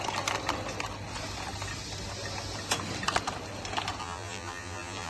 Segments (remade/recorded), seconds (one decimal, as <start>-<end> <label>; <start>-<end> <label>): 0.0-4.0 recorded; 4.0-5.1 remade